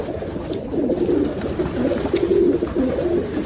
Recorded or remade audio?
recorded